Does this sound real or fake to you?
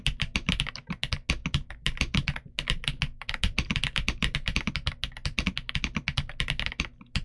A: real